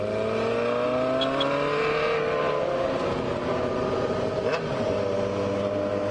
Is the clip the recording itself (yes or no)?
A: yes